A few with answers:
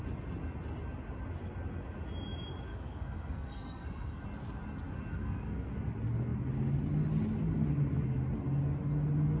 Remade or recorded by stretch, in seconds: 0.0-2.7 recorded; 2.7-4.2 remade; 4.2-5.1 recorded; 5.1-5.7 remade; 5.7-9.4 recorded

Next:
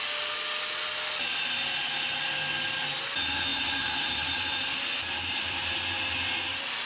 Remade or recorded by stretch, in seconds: 0.0-3.5 recorded; 3.5-4.5 remade; 4.5-6.9 recorded